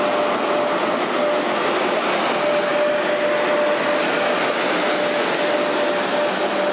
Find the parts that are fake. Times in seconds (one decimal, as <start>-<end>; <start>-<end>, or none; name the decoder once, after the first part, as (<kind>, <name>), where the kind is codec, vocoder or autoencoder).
none